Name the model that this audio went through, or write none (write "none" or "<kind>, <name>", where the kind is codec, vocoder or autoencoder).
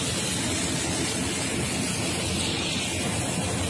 none